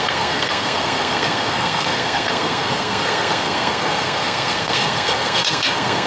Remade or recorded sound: remade